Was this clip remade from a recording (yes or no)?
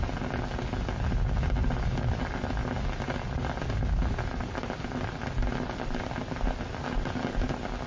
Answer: no